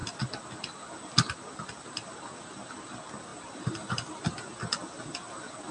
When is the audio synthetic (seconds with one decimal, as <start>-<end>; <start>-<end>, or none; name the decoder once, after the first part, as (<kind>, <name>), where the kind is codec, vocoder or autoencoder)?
3.3-4.2 (vocoder, BigVGAN v2)